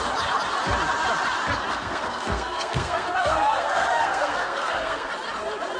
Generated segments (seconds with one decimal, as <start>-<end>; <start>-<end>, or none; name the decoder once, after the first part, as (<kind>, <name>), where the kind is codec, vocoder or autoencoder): 1.7-5.1 (codec, SNAC)